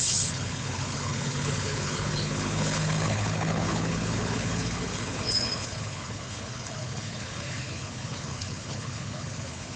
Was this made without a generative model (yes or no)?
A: no